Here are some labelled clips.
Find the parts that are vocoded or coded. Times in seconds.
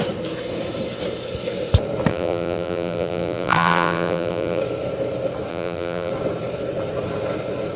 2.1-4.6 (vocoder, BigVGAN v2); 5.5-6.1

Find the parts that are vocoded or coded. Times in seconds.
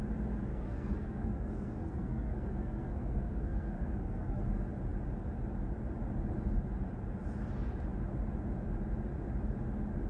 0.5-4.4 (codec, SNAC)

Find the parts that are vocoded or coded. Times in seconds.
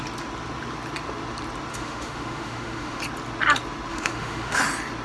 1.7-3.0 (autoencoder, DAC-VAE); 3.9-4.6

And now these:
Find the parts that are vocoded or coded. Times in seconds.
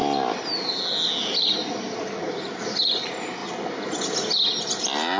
none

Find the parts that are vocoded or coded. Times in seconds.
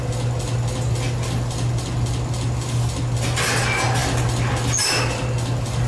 none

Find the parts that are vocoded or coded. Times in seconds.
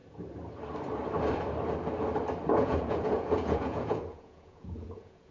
2.5-5.3 (vocoder, Vocos)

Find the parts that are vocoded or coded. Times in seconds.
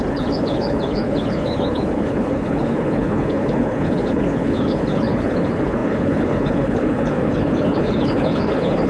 0.0-8.9 (codec, HILCodec)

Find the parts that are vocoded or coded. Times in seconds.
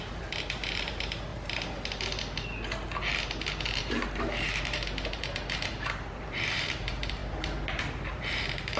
0.0-1.3 (vocoder, BigVGAN v2); 3.8-7.2; 7.8-8.8